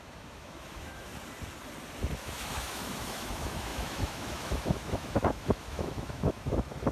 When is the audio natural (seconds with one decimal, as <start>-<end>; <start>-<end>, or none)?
1.1-2.2